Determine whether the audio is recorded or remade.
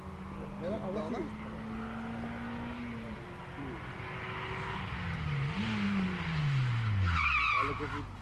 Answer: recorded